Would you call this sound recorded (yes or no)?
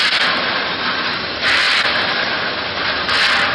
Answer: yes